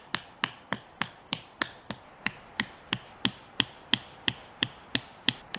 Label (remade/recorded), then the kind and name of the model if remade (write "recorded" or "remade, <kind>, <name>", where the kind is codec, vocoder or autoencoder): recorded